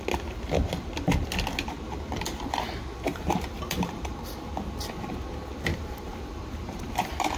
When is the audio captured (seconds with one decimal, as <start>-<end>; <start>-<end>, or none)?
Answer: 0.0-3.1; 5.1-5.7